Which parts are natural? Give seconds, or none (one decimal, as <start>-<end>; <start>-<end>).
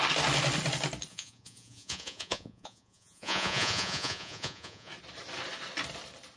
0.0-1.1; 4.9-6.4